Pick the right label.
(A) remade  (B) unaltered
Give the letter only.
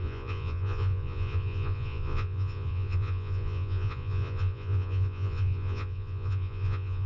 A